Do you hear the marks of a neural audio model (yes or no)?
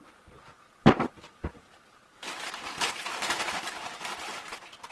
yes